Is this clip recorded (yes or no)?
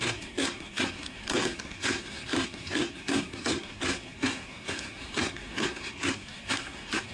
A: no